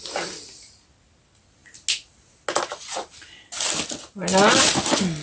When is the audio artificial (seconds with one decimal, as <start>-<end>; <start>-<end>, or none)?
none